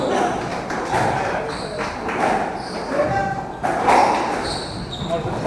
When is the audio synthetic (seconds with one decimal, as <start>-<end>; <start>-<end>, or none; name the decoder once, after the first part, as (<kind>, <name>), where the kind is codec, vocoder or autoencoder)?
0.5-2.5 (vocoder, BigVGAN v2); 4.0-4.6